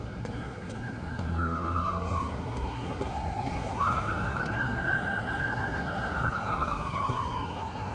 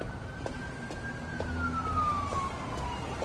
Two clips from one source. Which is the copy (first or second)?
first